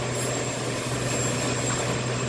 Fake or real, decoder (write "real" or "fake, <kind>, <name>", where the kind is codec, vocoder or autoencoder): real